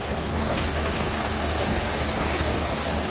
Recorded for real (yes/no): no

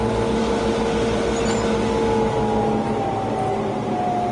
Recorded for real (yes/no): yes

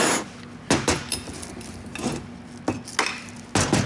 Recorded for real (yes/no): yes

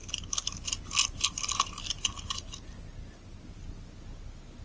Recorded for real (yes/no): yes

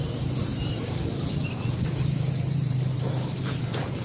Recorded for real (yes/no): yes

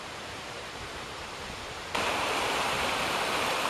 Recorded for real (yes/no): no